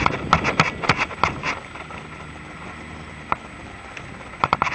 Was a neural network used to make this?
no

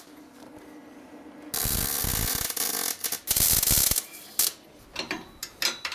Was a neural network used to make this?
no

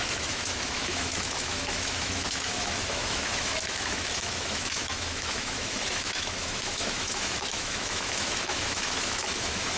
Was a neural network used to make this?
yes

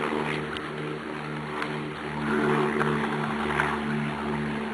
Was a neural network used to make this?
no